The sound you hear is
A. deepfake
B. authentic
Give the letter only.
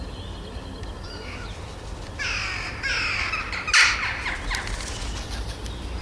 B